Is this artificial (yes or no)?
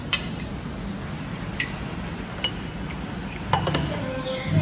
no